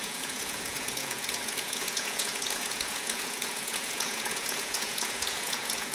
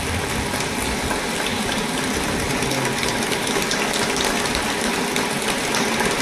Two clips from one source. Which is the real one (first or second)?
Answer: second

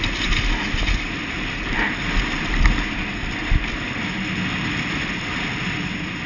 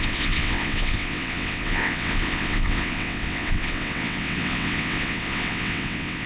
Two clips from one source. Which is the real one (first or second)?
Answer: first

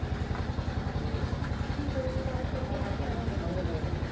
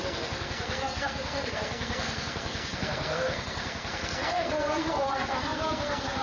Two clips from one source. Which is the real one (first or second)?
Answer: first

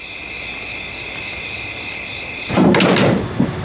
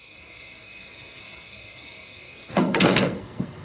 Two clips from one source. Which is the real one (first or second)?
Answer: first